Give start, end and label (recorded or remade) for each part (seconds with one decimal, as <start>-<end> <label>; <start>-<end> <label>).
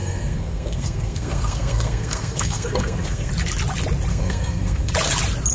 0.0-3.3 remade; 3.3-4.1 recorded; 4.1-4.9 remade; 4.9-5.5 recorded